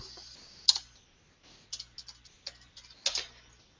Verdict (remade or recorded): recorded